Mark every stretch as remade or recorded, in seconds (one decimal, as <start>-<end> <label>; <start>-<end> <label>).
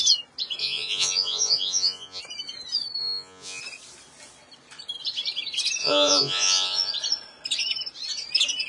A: 0.0-0.6 recorded; 0.6-2.2 remade; 2.2-3.0 recorded; 3.0-3.6 remade; 3.6-5.8 recorded; 5.8-6.9 remade; 6.9-8.7 recorded